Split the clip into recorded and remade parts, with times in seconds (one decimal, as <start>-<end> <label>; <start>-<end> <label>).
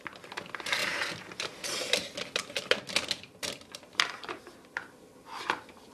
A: 0.0-5.9 recorded